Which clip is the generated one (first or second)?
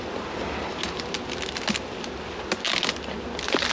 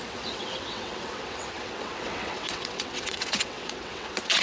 second